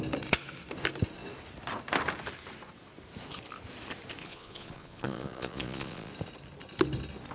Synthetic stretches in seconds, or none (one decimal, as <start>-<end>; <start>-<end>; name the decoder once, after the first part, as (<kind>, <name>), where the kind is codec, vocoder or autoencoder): 4.2-6.1 (vocoder, Vocos)